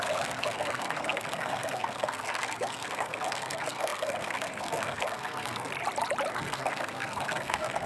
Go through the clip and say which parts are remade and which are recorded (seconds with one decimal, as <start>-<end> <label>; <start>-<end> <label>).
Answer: 0.0-5.7 remade; 5.7-6.3 recorded; 6.3-7.9 remade